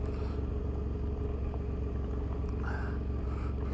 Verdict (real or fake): real